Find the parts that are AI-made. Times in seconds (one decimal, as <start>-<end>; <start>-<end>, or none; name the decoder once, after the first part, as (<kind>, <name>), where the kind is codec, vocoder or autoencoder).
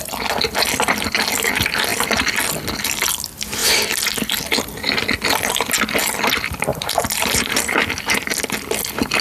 6.7-7.8 (vocoder, BigVGAN v2)